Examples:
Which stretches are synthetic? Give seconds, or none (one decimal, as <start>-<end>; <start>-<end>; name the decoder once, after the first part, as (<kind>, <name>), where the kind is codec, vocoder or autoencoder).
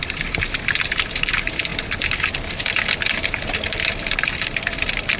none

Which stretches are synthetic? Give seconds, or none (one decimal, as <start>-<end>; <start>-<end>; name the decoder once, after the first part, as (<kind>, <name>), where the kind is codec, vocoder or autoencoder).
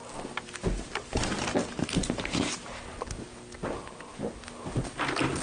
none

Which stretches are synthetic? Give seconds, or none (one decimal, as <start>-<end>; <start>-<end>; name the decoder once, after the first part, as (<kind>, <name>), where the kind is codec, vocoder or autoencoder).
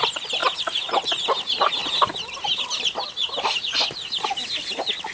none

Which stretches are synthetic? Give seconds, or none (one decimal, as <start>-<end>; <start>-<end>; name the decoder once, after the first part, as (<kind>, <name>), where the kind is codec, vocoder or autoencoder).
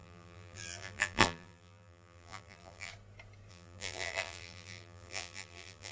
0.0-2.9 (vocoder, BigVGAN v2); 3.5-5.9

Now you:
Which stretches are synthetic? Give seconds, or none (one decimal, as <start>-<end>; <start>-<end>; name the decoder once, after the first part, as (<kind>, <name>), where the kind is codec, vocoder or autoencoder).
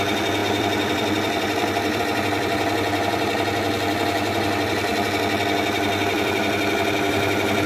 0.4-2.0 (vocoder, BigVGAN v2)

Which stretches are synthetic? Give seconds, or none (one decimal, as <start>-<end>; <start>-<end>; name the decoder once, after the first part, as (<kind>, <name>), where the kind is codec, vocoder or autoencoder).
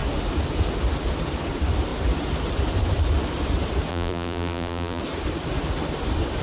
3.9-5.0 (vocoder, BigVGAN v2)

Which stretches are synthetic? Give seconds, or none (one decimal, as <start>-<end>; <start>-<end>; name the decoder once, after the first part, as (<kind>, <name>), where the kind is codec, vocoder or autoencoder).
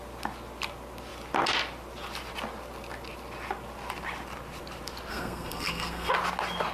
5.1-6.1 (codec, SNAC)